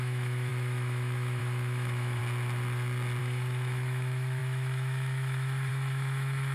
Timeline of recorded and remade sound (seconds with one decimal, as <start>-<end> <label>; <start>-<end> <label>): 0.0-2.2 remade; 2.2-3.2 recorded; 3.2-6.5 remade